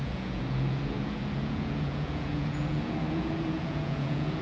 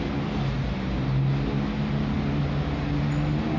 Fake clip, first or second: first